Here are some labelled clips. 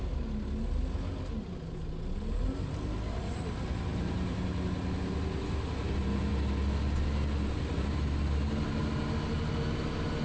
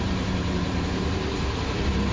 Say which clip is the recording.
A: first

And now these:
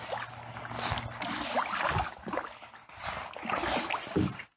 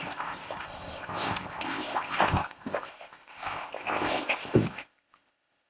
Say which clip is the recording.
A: first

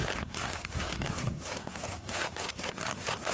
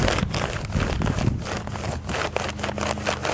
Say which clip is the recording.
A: second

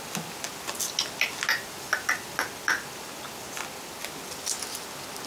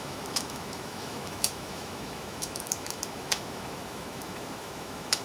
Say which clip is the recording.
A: first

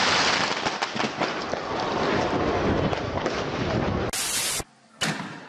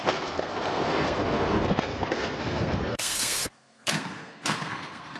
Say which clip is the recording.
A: first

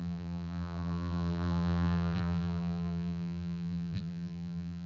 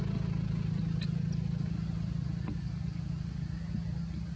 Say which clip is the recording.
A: second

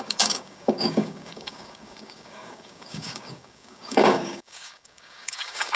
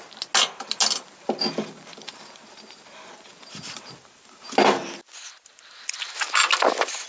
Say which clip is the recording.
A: second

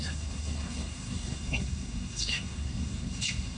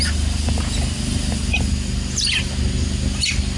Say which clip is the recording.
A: second